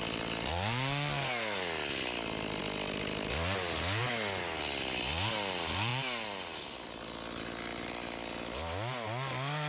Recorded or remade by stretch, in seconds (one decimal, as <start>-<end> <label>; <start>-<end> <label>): 0.0-9.7 recorded